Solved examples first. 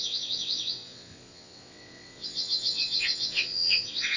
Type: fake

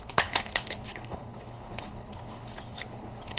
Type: fake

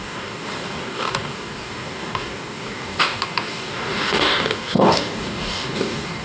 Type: fake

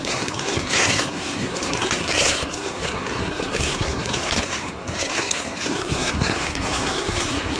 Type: fake